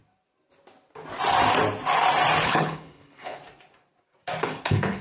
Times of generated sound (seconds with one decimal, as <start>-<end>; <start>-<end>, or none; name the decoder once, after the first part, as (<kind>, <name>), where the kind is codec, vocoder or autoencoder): 2.4-3.4 (codec, HILCodec); 4.4-5.0